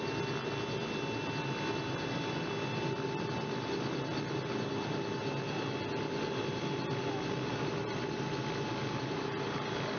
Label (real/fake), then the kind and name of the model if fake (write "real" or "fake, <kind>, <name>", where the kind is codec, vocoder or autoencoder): real